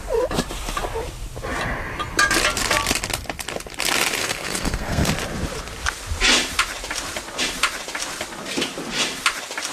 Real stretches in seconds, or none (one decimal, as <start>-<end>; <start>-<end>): 0.0-4.2; 5.1-9.7